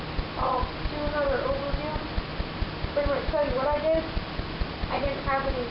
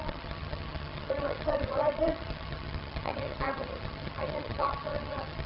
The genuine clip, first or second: first